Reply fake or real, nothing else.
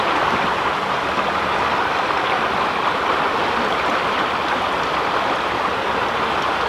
real